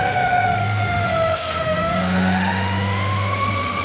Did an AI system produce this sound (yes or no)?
yes